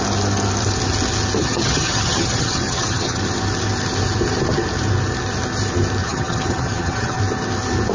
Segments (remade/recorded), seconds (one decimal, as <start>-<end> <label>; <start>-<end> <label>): 0.0-1.4 recorded; 1.4-3.2 remade; 3.2-6.0 recorded; 6.0-7.2 remade; 7.2-7.9 recorded